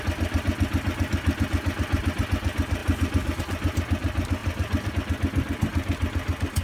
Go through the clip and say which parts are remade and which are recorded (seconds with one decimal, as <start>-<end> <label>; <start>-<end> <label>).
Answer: 0.0-2.8 recorded; 2.8-3.4 remade; 3.4-4.4 recorded; 4.4-4.9 remade; 4.9-6.6 recorded